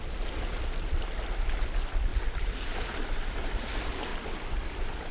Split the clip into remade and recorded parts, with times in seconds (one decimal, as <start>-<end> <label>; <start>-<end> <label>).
0.0-2.1 recorded; 2.1-3.1 remade; 3.1-4.1 recorded; 4.1-5.1 remade